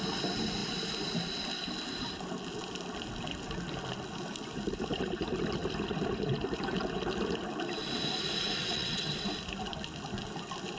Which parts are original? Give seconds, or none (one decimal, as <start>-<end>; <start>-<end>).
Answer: 0.0-8.6; 9.1-10.8

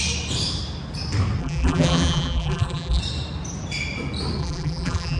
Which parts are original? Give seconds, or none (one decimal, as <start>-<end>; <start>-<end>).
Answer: 0.0-1.4; 3.0-4.4

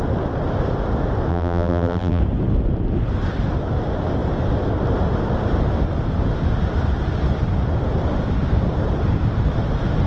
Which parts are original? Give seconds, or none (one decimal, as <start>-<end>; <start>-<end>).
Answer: 0.0-1.3; 2.2-10.1

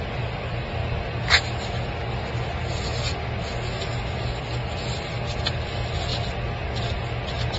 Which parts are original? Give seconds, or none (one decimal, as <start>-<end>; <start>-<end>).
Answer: 0.0-7.6

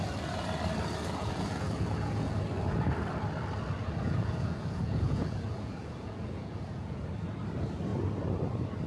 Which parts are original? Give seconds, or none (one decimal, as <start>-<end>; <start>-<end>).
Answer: 0.0-1.2; 2.4-3.8; 7.1-8.9

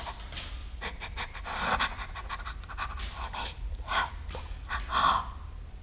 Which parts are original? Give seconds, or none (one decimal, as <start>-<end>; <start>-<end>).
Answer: 0.0-0.6; 4.1-5.8

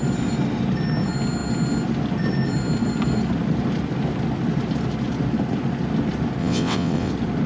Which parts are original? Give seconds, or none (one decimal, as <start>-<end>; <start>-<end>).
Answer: 0.0-6.4; 7.1-7.5